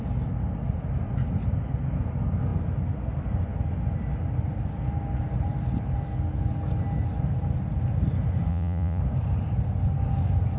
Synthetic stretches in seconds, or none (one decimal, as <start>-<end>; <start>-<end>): 8.5-9.0